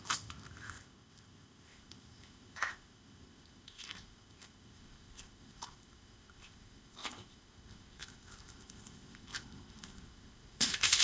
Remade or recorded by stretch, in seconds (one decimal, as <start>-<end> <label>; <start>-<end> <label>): 0.0-11.0 remade